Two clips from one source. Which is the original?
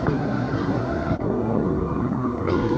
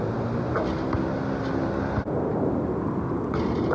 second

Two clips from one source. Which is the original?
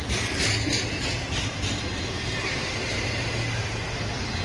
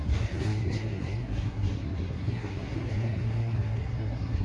first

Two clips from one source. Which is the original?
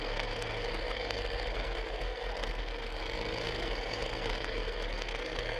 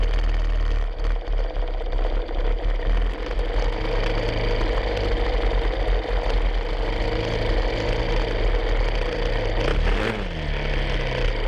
second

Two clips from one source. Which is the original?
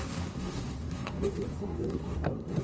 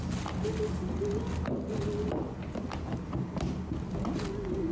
second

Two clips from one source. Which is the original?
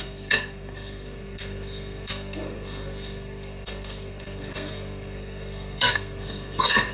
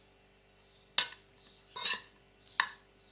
second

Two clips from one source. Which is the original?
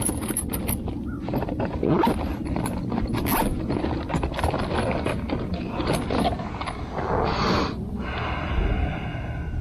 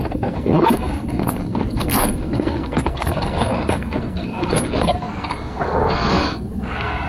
first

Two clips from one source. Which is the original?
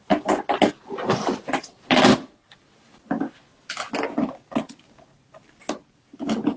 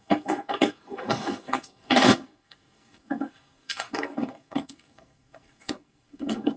first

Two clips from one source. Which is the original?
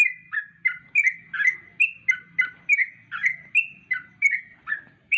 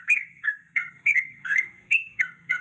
first